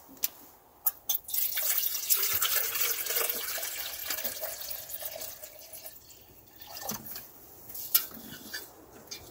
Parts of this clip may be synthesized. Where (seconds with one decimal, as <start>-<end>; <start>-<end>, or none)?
0.7-1.2; 1.9-2.7; 6.7-8.0